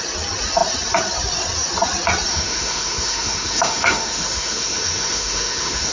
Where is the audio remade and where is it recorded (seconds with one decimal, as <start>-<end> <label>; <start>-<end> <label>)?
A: 0.0-2.3 recorded; 2.3-5.9 remade